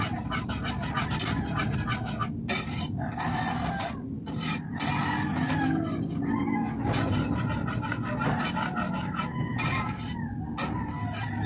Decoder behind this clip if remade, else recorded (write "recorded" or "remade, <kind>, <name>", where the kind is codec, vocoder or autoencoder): recorded